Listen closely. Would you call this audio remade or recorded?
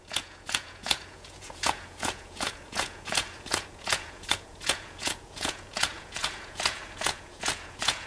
remade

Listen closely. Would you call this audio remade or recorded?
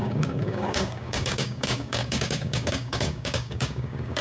remade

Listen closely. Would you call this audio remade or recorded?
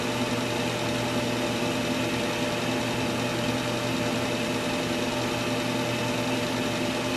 recorded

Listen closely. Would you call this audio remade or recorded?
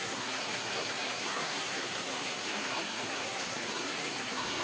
remade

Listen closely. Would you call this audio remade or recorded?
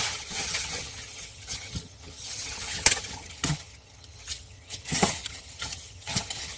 remade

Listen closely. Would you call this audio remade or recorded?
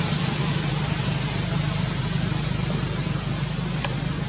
recorded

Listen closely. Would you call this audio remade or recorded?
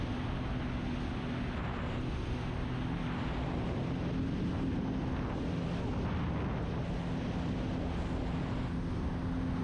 recorded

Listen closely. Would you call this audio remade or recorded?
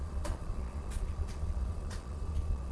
remade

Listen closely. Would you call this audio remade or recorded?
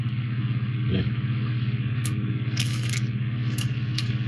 remade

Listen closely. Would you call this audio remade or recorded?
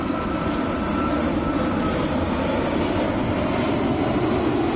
recorded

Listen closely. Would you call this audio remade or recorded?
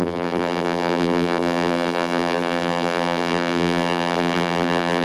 remade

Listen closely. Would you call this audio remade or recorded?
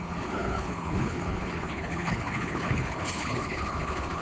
remade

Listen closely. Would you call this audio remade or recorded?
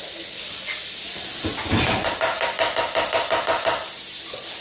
recorded